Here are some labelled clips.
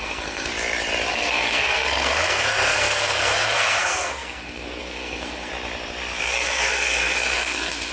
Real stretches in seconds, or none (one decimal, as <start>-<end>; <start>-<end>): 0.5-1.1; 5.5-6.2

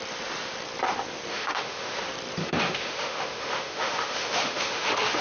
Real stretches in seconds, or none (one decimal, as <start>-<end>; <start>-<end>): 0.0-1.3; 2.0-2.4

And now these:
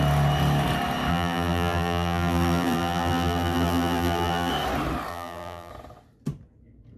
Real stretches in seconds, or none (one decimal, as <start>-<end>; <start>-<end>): 0.0-1.1; 4.5-5.1; 5.7-7.0

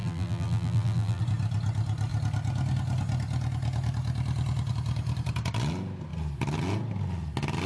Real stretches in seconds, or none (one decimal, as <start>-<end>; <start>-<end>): 1.2-7.7

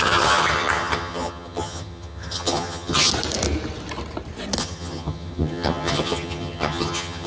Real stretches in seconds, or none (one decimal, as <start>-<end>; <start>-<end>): 3.1-4.6

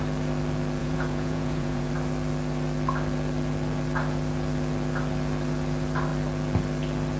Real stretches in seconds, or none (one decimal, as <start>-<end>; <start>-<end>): 0.0-0.8; 1.9-7.2